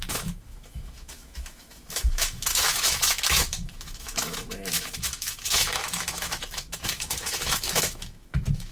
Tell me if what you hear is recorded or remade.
remade